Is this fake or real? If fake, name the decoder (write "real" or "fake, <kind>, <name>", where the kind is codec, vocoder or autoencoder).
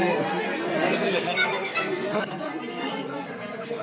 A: fake, codec, SNAC